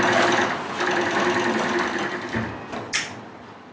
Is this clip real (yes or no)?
yes